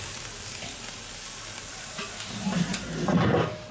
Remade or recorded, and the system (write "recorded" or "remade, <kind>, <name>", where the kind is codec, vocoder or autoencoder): recorded